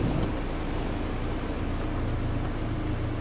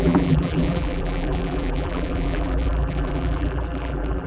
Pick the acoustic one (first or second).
first